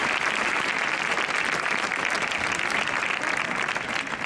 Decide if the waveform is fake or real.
real